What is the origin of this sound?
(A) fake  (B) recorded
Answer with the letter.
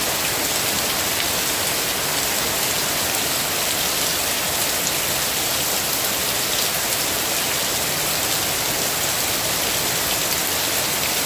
B